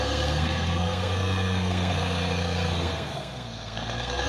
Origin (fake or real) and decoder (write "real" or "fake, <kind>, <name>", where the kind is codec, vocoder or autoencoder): fake, codec, SNAC